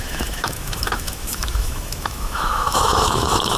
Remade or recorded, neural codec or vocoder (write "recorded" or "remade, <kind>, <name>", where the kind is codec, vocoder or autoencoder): remade, autoencoder, DAC-VAE